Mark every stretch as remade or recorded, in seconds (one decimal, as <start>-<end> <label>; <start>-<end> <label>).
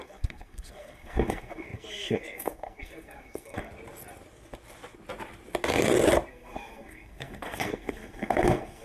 0.0-3.7 remade; 3.7-6.3 recorded; 6.3-8.8 remade